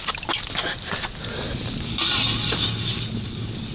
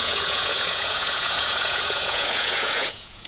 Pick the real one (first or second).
first